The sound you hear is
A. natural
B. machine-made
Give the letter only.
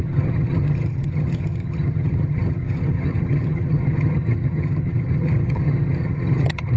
B